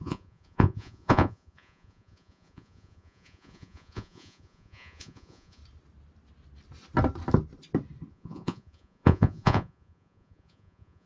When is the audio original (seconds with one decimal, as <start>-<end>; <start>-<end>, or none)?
5.6-8.1